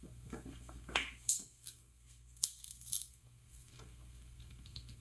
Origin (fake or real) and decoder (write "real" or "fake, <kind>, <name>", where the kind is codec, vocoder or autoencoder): fake, codec, SNAC